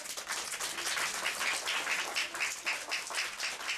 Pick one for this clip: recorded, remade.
recorded